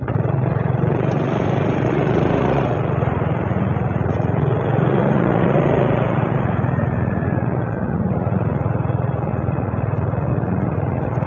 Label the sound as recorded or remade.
remade